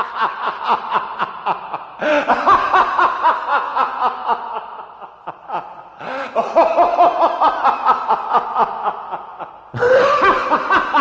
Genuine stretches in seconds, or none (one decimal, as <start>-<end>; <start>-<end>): 0.0-3.5; 4.0-11.0